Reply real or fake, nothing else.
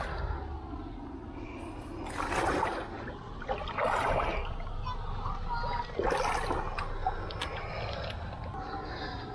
real